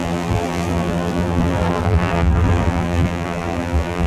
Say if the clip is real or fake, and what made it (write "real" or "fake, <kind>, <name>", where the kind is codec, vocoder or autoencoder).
fake, vocoder, BigVGAN v2